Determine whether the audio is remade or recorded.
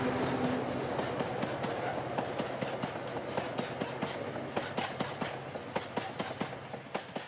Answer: recorded